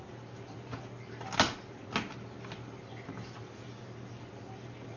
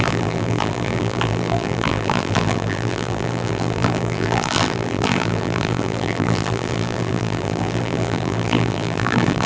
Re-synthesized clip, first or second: second